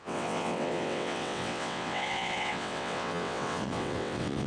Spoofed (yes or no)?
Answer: yes